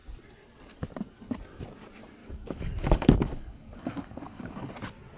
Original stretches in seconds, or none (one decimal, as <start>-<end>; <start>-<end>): 0.0-2.2; 4.7-5.2